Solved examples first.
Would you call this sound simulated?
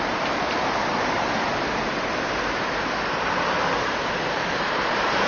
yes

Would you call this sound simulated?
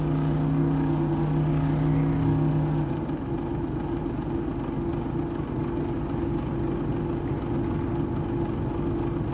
no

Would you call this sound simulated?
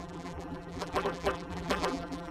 yes